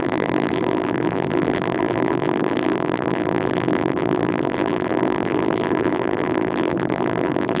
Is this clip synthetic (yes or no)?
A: yes